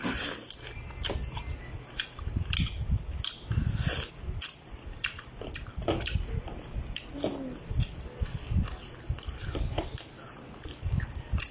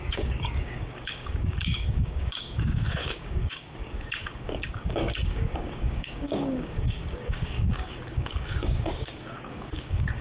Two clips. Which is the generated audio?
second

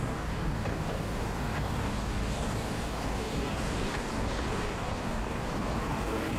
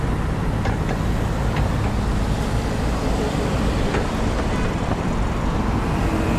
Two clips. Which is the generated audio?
first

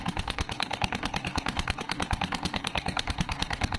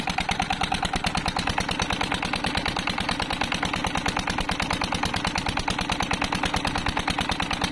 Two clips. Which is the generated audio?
first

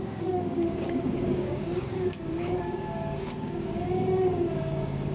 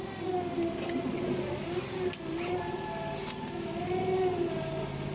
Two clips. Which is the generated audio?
first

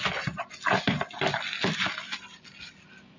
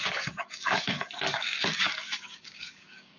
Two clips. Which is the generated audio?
second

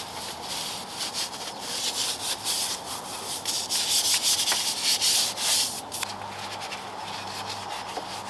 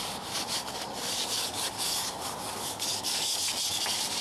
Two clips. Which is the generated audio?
second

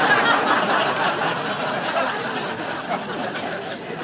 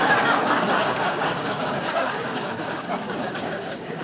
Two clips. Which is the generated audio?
second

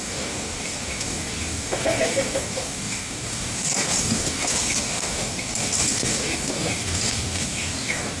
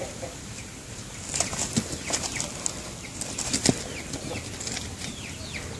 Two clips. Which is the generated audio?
first